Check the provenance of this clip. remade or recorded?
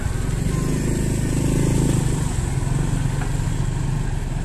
recorded